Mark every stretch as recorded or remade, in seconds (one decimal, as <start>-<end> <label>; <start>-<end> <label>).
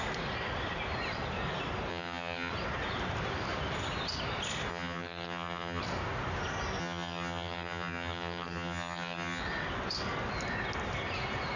0.0-1.9 recorded; 1.9-2.5 remade; 2.5-4.7 recorded; 4.7-5.8 remade; 5.8-6.8 recorded; 6.8-9.4 remade; 9.4-11.6 recorded